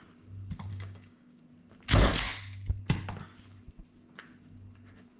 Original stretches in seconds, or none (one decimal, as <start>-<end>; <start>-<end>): 0.0-0.7; 1.4-5.2